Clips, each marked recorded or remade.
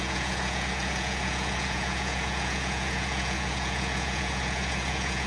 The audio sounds remade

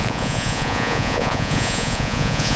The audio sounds remade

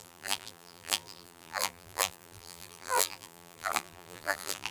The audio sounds remade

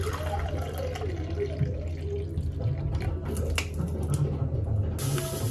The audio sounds recorded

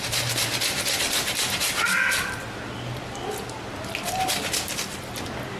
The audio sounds recorded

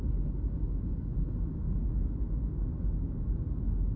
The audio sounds recorded